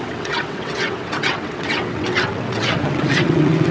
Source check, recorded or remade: remade